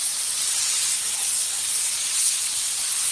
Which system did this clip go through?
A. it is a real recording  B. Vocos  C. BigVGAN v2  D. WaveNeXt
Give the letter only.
D